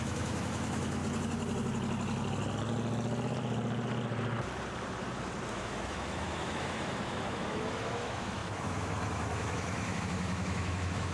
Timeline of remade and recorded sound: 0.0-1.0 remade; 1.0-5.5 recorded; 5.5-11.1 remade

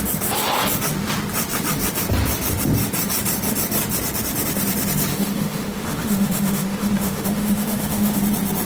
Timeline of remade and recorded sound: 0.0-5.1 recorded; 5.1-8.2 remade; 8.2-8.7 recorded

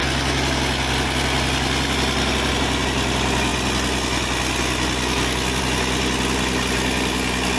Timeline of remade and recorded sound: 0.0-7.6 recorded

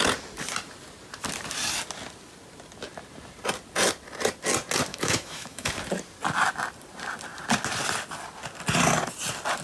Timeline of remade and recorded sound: 0.0-4.9 recorded; 4.9-5.7 remade; 5.7-9.6 recorded

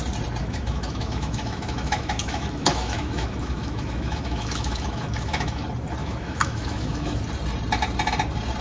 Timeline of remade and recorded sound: 0.0-0.4 recorded; 0.4-5.6 remade; 5.6-6.0 recorded; 6.0-7.2 remade; 7.2-8.6 recorded

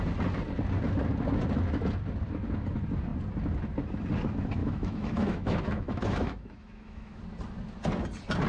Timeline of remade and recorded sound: 0.0-4.6 recorded; 4.6-7.2 remade; 7.2-8.5 recorded

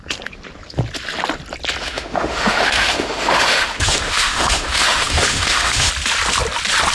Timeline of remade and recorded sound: 0.0-1.8 recorded; 1.8-5.9 remade; 5.9-6.9 recorded

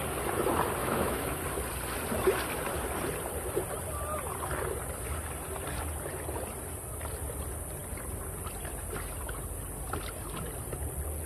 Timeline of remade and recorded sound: 0.0-0.8 recorded; 0.8-1.4 remade; 1.4-11.3 recorded